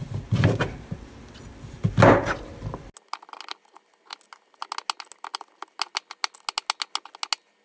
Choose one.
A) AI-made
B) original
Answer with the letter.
B